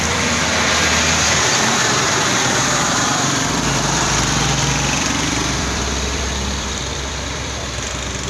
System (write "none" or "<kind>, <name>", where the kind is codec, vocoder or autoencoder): vocoder, BigVGAN v2